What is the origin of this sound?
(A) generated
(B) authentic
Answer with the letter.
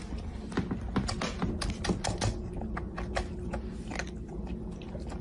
B